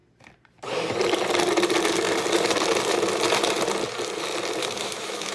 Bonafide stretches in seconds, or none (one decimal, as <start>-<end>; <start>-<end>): 0.0-4.6